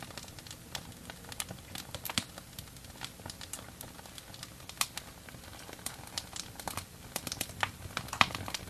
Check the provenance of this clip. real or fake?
real